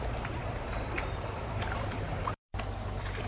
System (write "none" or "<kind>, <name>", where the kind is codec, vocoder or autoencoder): vocoder, BigVGAN v2